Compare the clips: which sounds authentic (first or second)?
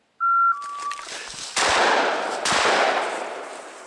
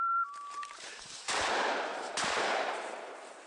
first